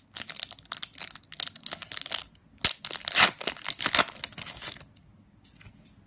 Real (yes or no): yes